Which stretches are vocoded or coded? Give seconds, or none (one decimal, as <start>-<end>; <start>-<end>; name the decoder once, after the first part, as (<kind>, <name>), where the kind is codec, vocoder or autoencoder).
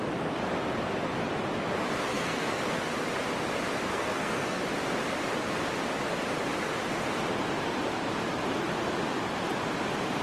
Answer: 2.1-2.6 (codec, SNAC); 3.9-4.6